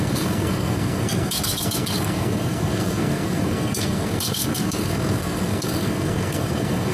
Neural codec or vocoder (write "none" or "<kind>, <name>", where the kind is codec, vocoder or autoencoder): codec, SNAC